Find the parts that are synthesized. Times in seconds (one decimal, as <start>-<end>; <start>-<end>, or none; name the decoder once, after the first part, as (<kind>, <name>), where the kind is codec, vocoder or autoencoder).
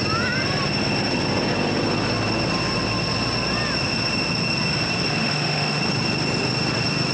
5.2-5.8 (autoencoder, DAC-VAE)